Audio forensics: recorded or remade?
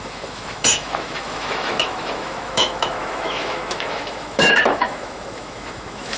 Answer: remade